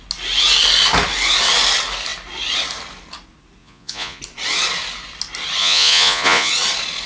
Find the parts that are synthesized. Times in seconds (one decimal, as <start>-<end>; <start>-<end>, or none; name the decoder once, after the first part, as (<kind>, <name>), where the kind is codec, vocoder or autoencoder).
3.6-4.2 (vocoder, Vocos); 5.6-6.5